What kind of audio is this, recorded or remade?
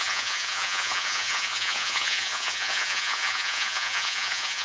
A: remade